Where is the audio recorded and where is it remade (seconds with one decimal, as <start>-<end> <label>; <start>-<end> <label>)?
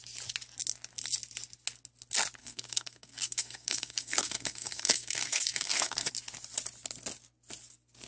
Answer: 0.0-2.4 recorded; 2.4-6.1 remade; 6.1-8.1 recorded